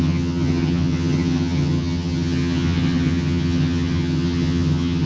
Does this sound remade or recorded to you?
remade